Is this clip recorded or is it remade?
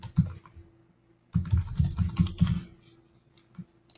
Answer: recorded